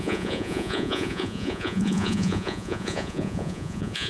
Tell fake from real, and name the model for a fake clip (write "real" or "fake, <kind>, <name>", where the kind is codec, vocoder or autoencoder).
fake, vocoder, Vocos